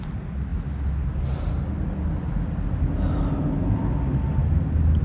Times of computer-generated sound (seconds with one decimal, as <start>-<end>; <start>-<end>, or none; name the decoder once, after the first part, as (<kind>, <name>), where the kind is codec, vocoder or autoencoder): 4.4-5.0 (vocoder, BigVGAN v2)